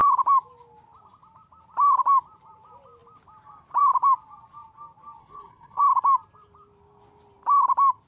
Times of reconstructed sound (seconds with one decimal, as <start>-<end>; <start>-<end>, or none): 5.2-5.8